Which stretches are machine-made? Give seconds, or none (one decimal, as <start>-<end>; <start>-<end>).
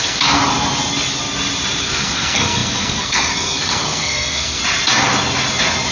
0.0-0.4; 1.8-4.6